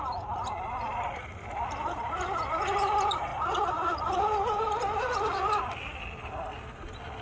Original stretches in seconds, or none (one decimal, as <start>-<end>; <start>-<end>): 0.0-7.2